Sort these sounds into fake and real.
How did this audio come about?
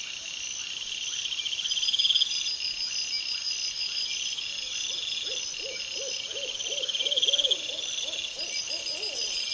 real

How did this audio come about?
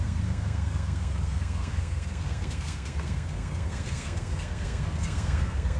fake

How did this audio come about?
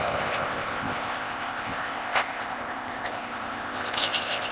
fake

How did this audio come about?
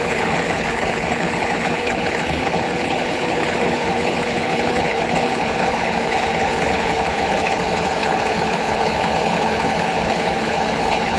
fake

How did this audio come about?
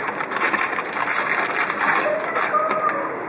real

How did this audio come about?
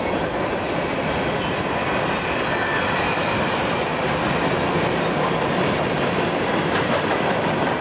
real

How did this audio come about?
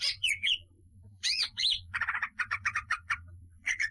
fake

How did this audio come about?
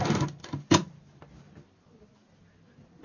real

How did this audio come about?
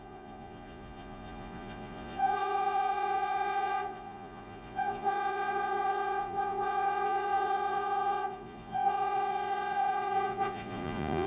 fake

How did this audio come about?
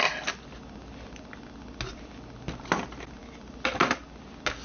real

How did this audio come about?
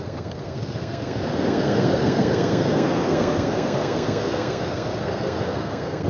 fake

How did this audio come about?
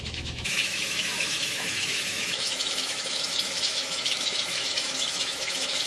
fake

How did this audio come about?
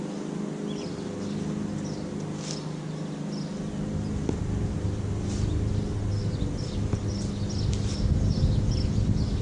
real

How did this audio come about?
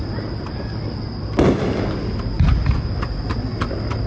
real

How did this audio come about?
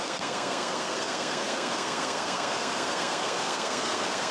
fake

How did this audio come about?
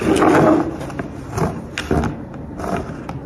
real